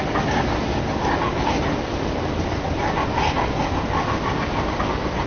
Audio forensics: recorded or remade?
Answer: recorded